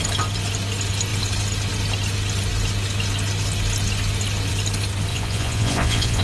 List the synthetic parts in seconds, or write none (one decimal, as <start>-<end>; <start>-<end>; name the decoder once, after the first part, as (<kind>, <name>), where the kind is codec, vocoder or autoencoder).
5.1-6.2 (vocoder, Vocos)